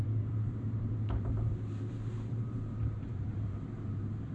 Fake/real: fake